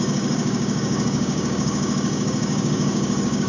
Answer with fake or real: fake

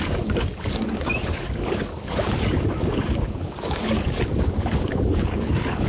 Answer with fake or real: fake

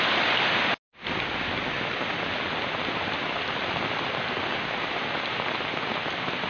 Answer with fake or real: real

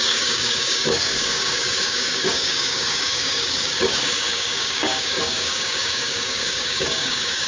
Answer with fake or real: fake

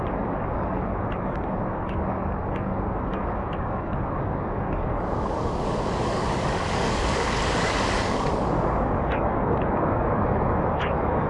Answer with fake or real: fake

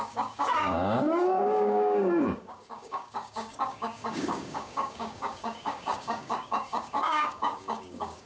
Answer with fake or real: fake